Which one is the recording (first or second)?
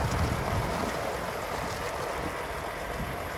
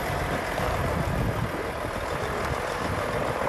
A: first